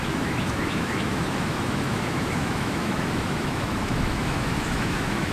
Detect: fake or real fake